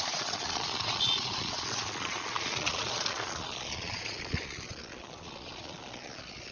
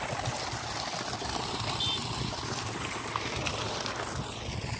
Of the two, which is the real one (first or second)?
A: second